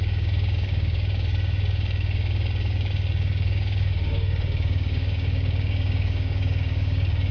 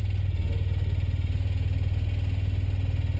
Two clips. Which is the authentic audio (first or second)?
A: second